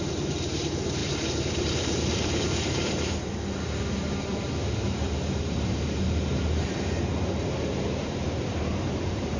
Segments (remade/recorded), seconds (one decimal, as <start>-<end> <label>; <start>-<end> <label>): 0.0-9.4 remade